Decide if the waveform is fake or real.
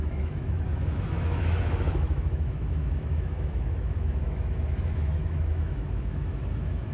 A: fake